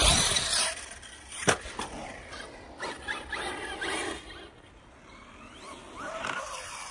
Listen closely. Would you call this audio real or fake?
real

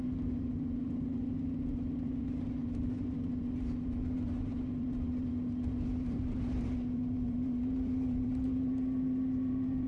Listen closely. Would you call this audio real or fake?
fake